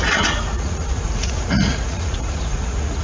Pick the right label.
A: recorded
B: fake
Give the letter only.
B